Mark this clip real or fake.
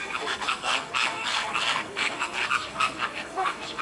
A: fake